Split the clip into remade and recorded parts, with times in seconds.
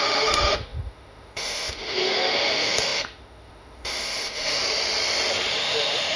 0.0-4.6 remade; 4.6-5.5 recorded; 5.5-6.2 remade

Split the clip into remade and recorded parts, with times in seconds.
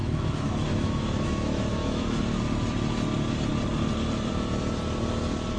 0.0-2.2 remade; 2.2-5.6 recorded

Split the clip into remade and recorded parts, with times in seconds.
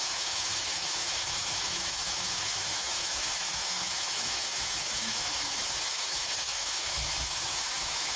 0.0-8.2 remade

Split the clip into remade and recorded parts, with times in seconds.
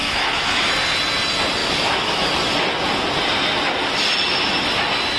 0.0-0.7 remade; 0.7-1.6 recorded; 1.6-2.3 remade; 2.3-5.2 recorded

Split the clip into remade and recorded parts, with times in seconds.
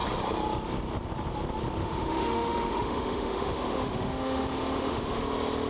0.0-1.8 recorded; 1.8-5.2 remade; 5.2-5.7 recorded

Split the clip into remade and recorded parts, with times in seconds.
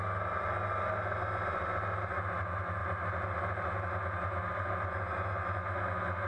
0.0-6.3 recorded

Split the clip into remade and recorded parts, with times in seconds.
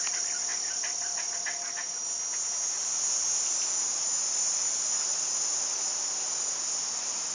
0.0-7.3 recorded